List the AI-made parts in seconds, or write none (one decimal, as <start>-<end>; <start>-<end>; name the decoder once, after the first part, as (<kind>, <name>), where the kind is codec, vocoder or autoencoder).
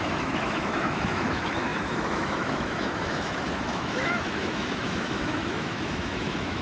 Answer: 0.0-6.6 (autoencoder, DAC-VAE)